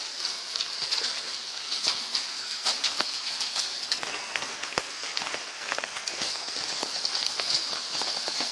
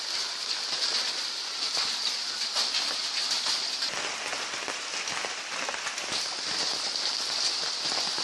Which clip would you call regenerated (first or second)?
first